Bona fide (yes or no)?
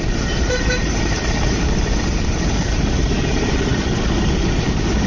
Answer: no